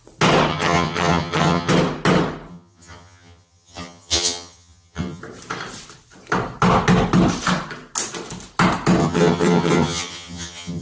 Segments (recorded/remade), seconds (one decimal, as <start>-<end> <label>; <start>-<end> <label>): 0.0-0.5 recorded; 0.5-1.7 remade; 1.7-2.5 recorded; 2.5-5.2 remade; 5.2-9.0 recorded; 9.0-10.8 remade